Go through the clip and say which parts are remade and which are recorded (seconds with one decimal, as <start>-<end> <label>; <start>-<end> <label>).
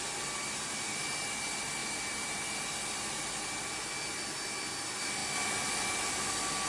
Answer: 0.0-1.8 recorded; 1.8-2.6 remade; 2.6-6.7 recorded